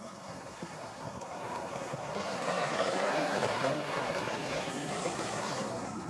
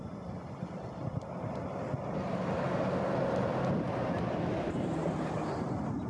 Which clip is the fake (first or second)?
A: first